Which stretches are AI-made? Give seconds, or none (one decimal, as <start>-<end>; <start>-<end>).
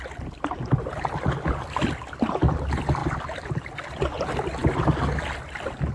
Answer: 3.0-3.9